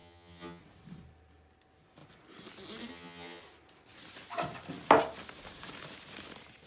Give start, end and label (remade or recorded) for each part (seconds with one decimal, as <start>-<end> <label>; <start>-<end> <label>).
0.0-0.6 remade; 0.6-2.9 recorded; 2.9-3.4 remade; 3.4-6.7 recorded